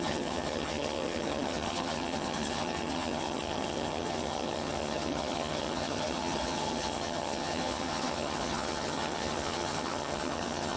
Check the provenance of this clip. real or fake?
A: fake